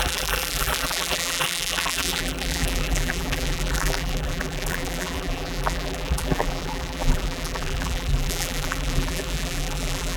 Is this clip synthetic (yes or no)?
yes